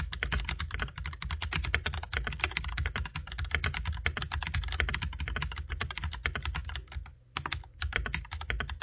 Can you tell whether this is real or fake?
real